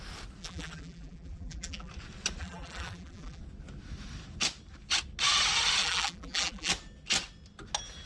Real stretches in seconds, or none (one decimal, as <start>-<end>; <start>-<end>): 0.0-0.4; 1.9-2.4; 3.4-5.8; 6.7-8.1